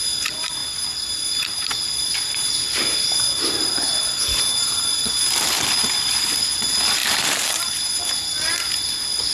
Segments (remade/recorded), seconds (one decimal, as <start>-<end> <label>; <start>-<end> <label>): 0.0-7.0 recorded; 7.0-7.6 remade; 7.6-9.3 recorded